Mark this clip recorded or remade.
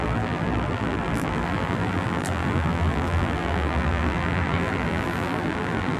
remade